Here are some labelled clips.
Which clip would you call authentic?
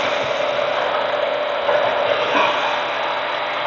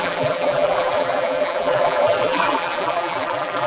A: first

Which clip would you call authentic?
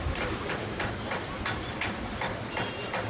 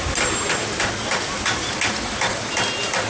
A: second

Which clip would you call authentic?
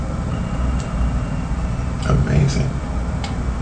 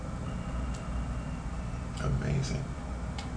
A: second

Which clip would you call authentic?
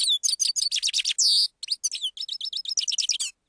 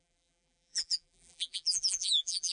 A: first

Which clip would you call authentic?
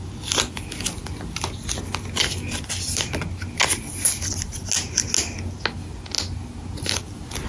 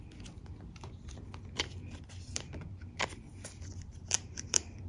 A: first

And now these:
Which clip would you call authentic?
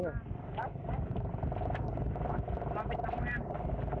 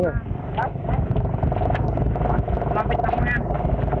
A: second